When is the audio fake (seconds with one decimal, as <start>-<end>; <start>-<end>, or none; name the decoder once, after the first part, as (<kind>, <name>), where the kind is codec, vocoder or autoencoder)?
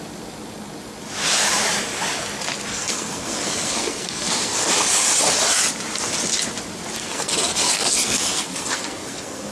2.7-4.7 (codec, SNAC); 7.0-9.5